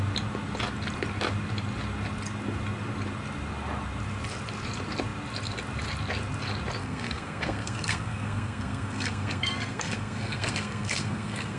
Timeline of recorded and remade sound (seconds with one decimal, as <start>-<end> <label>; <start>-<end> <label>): 0.0-6.8 recorded; 6.8-11.6 remade